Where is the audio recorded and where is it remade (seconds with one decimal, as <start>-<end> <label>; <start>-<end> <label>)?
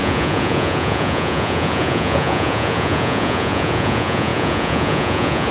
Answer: 0.0-5.5 remade